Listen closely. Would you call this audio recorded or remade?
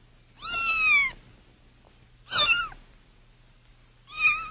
recorded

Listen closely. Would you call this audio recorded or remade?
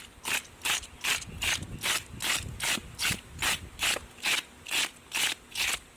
recorded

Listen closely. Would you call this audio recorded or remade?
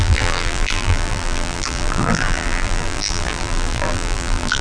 remade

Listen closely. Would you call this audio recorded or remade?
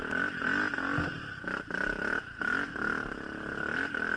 recorded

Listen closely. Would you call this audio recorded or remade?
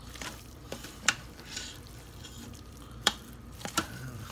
remade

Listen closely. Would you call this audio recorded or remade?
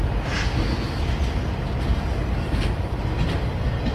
recorded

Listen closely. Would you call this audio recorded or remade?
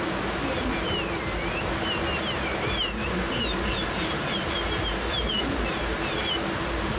remade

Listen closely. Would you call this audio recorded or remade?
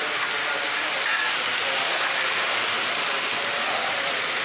recorded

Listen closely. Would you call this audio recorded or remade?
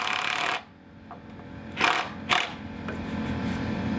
recorded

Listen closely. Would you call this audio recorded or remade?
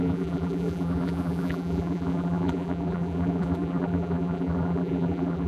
remade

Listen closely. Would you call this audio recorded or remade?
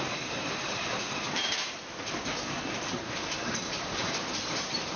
remade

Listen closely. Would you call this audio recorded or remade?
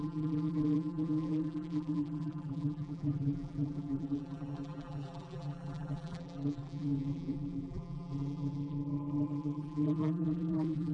remade